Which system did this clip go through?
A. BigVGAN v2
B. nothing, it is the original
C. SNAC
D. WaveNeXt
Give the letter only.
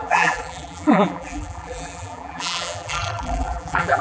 A